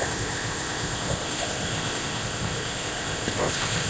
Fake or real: fake